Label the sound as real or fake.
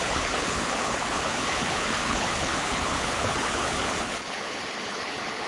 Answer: fake